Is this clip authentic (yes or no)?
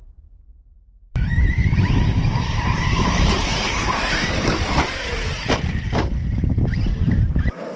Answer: no